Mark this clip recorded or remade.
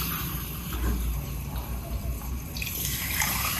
remade